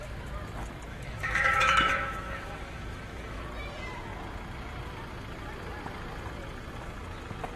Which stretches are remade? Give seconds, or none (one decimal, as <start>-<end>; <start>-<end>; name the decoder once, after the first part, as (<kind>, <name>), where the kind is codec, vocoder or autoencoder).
0.9-3.4 (autoencoder, DAC-VAE)